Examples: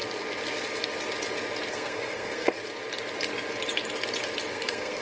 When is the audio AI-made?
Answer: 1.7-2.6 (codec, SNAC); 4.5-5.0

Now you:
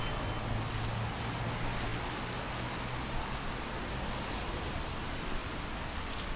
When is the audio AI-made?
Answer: none